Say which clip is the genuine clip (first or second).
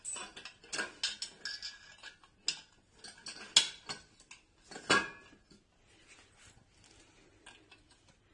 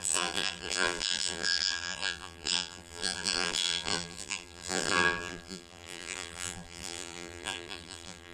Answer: first